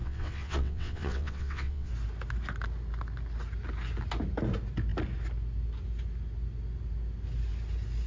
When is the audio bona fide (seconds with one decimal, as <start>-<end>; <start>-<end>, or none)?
1.9-8.1